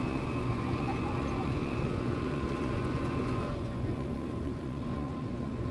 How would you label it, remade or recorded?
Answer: remade